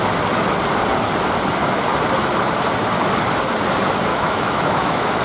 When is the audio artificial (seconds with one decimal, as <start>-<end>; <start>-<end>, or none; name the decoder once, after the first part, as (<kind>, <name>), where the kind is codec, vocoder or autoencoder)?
4.1-5.2 (autoencoder, DAC-VAE)